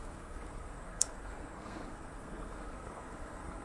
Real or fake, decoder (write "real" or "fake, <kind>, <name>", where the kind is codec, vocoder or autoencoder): fake, codec, SNAC